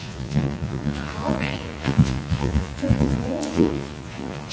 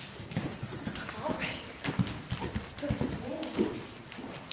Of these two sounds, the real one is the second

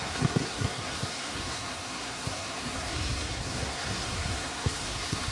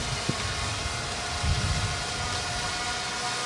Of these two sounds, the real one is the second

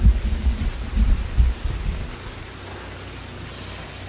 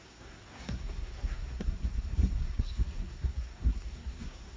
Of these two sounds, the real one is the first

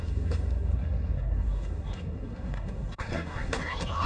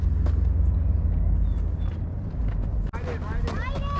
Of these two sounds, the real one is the second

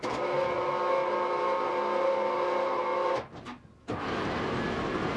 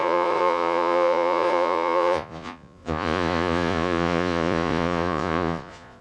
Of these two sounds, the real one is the first